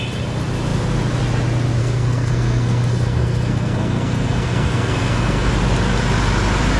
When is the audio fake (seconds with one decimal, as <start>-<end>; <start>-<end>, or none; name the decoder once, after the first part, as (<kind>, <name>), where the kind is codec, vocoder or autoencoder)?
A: 1.8-5.5 (codec, SNAC)